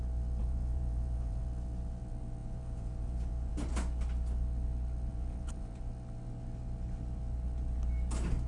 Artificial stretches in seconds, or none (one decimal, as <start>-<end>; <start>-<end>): 0.4-1.4; 2.4-3.5; 5.1-5.9